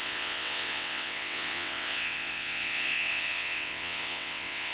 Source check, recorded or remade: remade